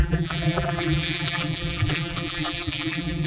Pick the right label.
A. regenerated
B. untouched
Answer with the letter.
A